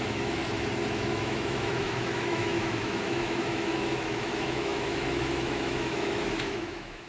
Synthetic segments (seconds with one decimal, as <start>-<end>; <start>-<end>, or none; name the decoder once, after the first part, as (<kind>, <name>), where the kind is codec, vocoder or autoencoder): 0.0-0.4 (autoencoder, DAC-VAE); 0.9-7.1